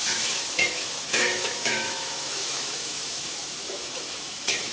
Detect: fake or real fake